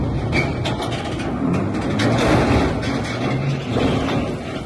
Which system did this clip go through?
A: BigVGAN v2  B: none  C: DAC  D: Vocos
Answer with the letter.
B